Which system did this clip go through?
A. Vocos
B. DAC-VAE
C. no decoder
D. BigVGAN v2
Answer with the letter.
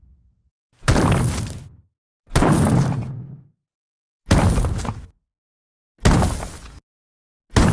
C